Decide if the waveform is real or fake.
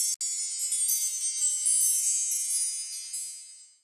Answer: real